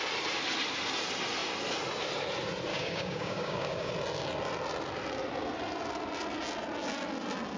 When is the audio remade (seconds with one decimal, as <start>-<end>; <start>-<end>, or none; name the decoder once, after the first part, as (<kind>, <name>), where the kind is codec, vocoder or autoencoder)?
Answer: 2.7-3.9 (codec, DAC)

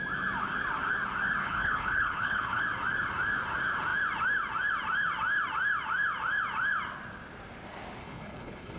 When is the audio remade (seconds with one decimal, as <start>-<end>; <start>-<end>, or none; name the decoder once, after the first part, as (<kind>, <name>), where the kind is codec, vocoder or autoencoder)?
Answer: 1.4-2.6 (codec, HILCodec); 8.0-8.8